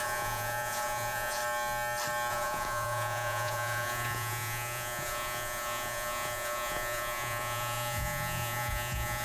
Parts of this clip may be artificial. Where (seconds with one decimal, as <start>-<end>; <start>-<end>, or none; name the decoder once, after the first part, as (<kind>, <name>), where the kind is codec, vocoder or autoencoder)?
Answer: 0.0-1.4 (vocoder, Vocos); 2.3-9.2

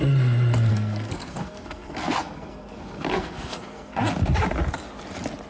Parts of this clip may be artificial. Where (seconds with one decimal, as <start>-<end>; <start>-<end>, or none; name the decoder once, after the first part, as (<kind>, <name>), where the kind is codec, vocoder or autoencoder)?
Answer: 0.7-4.0 (codec, SNAC)

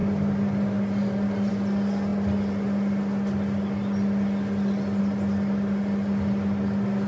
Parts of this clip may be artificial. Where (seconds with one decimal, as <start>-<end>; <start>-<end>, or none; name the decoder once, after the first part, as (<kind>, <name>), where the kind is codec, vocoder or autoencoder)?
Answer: none

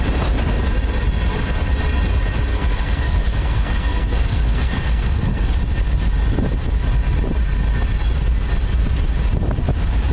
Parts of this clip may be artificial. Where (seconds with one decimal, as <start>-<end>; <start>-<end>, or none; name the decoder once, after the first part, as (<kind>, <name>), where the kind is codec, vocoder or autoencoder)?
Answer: 2.5-5.5 (codec, SNAC)

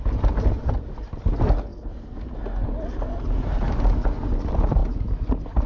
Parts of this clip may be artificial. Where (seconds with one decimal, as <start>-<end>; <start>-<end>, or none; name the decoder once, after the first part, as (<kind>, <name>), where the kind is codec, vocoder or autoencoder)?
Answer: none